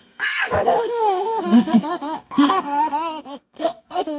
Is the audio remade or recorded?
remade